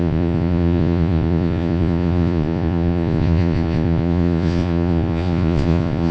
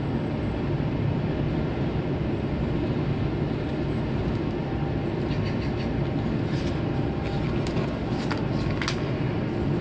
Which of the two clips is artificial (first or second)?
first